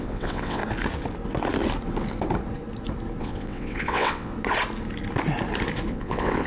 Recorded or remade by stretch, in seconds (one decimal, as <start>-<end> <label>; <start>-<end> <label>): 0.0-0.6 remade; 0.6-3.2 recorded; 3.2-4.3 remade; 4.3-5.9 recorded; 5.9-6.5 remade